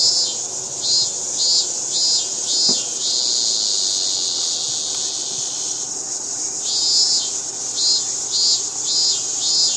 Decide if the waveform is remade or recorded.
recorded